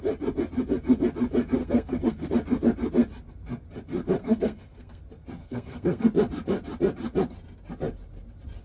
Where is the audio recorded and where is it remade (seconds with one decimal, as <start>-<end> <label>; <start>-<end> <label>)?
0.0-1.6 recorded; 1.6-2.3 remade; 2.3-4.2 recorded; 4.2-5.0 remade; 5.0-5.4 recorded; 5.4-6.0 remade; 6.0-8.6 recorded